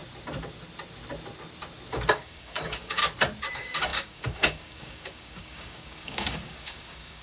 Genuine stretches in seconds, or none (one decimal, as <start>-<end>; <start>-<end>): 0.0-2.1; 3.0-3.5